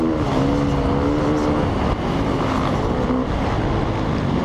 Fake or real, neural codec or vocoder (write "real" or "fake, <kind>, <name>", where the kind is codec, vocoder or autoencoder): real